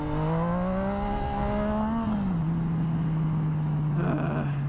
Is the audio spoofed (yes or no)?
no